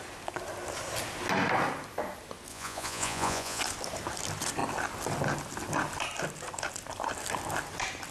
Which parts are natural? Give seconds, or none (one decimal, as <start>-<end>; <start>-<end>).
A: 0.0-2.5; 3.6-8.1